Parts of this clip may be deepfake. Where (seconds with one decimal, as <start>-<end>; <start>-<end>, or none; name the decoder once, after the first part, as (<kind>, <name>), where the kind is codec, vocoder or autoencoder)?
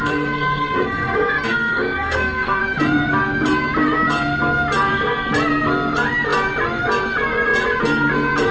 0.0-2.6 (codec, SNAC)